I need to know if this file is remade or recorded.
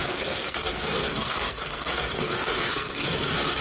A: remade